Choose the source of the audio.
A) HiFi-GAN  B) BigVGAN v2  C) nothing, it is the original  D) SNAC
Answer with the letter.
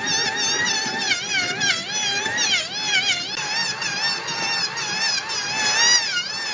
C